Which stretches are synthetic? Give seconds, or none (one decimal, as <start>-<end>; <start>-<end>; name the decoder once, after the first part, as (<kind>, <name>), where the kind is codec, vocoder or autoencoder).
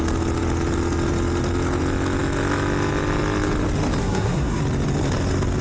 4.0-4.6 (codec, SNAC)